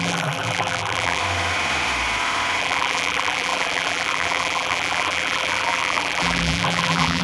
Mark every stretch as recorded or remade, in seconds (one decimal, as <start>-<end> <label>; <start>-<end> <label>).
0.0-1.2 remade; 1.2-2.6 recorded; 2.6-7.2 remade